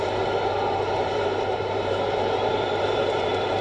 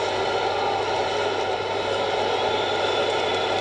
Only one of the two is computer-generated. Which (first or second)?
first